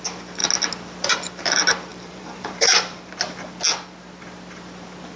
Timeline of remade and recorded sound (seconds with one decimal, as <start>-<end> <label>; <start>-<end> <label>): 0.0-1.9 recorded; 1.9-3.1 remade; 3.1-5.2 recorded